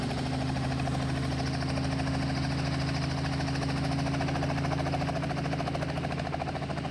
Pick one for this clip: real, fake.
real